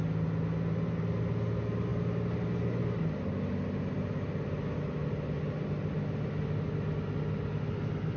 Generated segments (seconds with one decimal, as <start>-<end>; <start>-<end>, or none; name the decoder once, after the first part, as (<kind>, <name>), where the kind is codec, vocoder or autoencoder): none